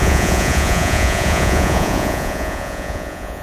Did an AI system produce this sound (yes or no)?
yes